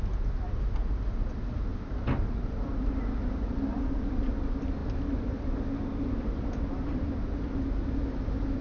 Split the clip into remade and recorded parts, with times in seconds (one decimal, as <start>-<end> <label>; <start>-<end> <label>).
0.0-8.6 recorded